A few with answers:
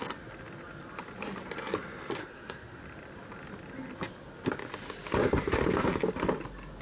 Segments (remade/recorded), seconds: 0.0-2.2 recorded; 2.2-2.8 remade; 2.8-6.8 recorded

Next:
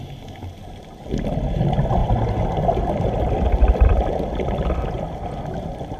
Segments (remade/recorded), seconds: 0.0-6.0 recorded

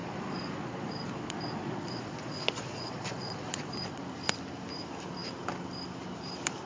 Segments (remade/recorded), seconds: 0.0-4.0 remade; 4.0-6.7 recorded

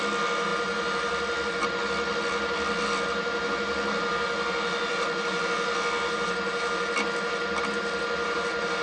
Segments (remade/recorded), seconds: 0.0-8.8 recorded

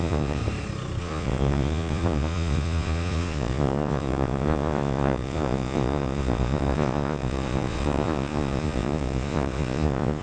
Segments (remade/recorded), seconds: 0.0-0.4 remade; 0.4-1.0 recorded; 1.0-10.2 remade

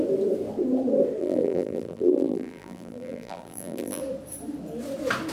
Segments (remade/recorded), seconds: 0.0-1.2 recorded; 1.2-4.0 remade; 4.0-5.3 recorded

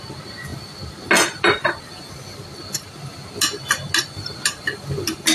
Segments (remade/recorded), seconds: 0.0-5.3 recorded